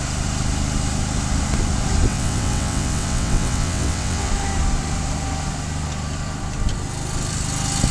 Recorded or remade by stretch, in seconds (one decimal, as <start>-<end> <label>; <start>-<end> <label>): 0.0-2.1 recorded; 2.1-4.3 remade; 4.3-7.9 recorded